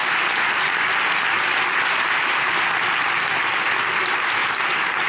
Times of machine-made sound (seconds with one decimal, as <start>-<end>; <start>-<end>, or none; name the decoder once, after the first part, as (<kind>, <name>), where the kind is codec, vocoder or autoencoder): 4.4-5.1 (vocoder, BigVGAN v2)